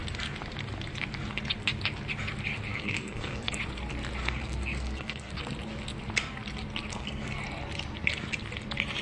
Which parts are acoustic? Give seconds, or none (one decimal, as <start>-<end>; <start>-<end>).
0.0-2.7; 3.6-4.2; 5.3-6.9; 7.4-9.0